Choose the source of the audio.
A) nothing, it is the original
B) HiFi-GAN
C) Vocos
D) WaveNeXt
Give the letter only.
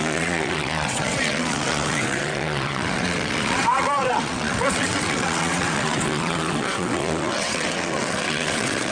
D